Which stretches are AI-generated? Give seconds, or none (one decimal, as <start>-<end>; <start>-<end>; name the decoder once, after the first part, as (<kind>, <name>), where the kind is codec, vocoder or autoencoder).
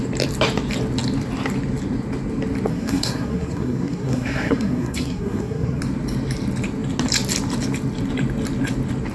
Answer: 2.7-5.8 (codec, SNAC)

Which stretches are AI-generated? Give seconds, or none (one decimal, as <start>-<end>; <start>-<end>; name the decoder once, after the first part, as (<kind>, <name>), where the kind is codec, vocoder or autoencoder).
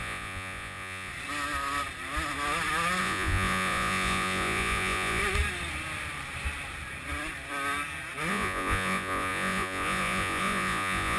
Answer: 0.0-1.1 (vocoder, Vocos); 3.0-5.2; 8.3-11.2